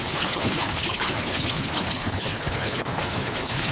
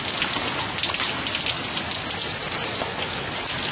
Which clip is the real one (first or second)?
second